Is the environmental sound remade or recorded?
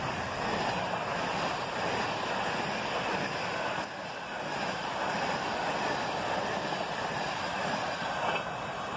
recorded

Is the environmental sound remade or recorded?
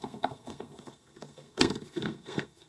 remade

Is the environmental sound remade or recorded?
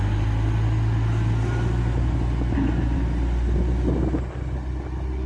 recorded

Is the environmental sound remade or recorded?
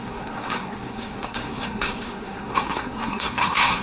remade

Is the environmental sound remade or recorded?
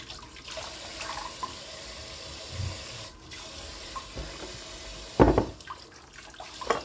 recorded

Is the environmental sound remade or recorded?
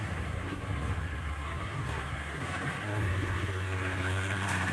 remade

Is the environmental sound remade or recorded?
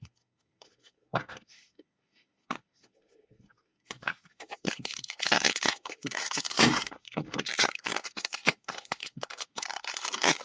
remade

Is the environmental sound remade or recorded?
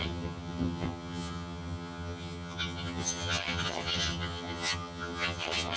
remade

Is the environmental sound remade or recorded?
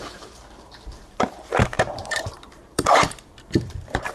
remade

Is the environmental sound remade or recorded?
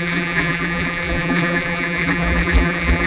remade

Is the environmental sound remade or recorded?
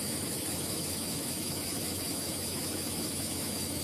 remade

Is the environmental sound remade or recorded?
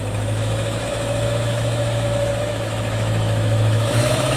remade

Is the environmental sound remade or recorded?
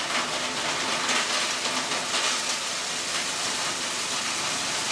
recorded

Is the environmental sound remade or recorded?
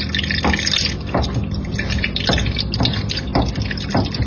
recorded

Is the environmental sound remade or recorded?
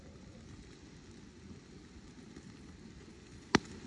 recorded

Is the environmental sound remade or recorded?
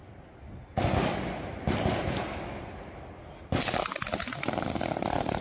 remade